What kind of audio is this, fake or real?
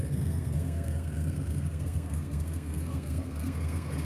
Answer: fake